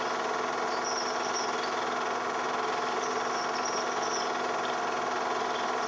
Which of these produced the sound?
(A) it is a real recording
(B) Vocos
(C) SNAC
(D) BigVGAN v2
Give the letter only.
A